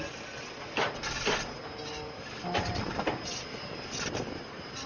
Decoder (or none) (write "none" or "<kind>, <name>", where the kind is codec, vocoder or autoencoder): none